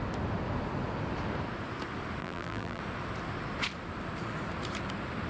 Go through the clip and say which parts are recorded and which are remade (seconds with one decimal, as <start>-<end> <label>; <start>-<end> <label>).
0.0-2.2 recorded; 2.2-2.8 remade; 2.8-5.3 recorded